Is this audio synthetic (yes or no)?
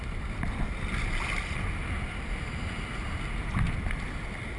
no